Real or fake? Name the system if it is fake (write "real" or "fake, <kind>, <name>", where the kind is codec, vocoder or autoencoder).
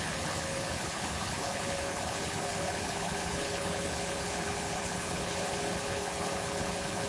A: fake, codec, HILCodec